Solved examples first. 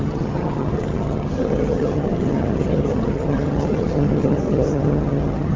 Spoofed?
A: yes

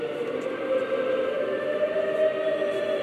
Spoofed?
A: no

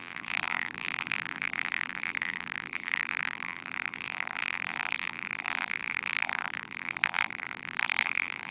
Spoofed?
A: yes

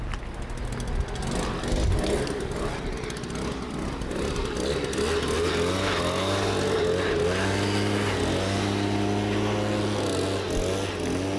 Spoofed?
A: no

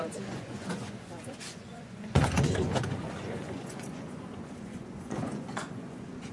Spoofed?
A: yes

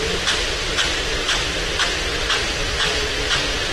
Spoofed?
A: no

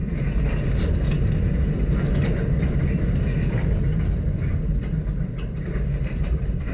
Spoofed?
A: no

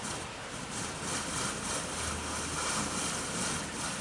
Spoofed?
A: no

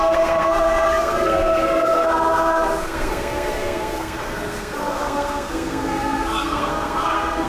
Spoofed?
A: yes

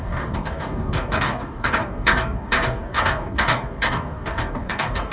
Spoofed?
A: yes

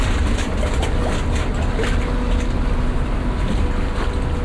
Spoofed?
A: no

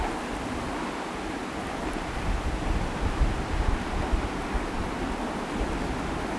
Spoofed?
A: no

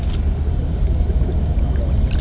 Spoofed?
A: no